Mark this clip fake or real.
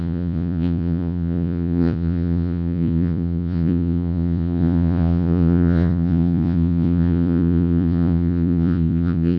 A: fake